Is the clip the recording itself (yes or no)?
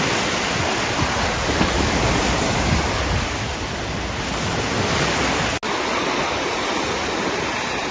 yes